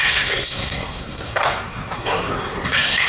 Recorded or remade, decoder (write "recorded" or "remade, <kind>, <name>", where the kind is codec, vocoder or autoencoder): remade, codec, SNAC